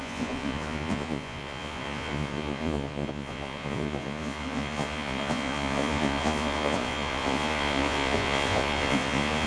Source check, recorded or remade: remade